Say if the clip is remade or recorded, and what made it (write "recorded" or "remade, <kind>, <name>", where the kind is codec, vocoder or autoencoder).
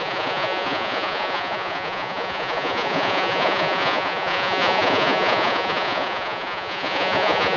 remade, vocoder, Vocos